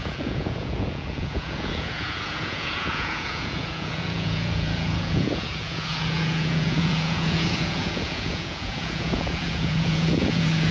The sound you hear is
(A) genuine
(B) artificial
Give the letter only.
B